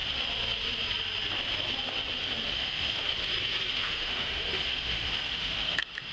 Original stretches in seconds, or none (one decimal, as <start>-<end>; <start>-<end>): 0.0-2.5; 3.1-3.7